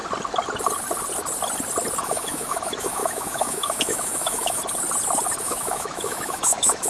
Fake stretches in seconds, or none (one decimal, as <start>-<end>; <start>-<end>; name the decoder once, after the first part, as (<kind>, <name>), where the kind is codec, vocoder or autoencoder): 2.0-4.6 (autoencoder, DAC-VAE); 5.4-6.9